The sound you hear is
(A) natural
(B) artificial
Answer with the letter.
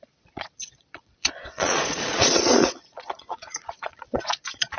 B